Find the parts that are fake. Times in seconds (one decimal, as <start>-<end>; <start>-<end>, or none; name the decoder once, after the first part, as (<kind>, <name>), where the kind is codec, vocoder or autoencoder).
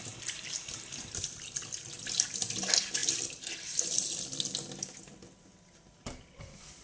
none